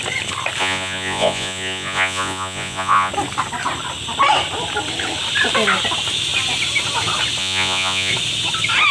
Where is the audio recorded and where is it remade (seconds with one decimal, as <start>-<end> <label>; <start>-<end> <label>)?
0.0-0.6 recorded; 0.6-3.1 remade; 3.1-7.4 recorded; 7.4-8.1 remade; 8.1-8.9 recorded